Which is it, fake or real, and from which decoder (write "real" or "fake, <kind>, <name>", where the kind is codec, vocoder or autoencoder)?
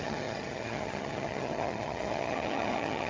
fake, vocoder, HiFi-GAN